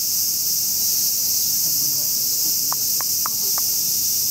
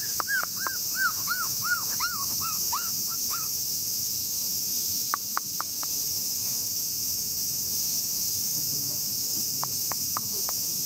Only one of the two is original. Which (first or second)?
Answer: first